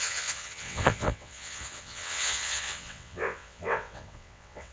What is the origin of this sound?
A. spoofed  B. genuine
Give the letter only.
A